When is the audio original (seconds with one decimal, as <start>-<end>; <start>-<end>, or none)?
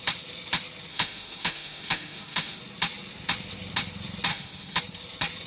0.0-0.9; 2.6-4.3; 4.8-5.5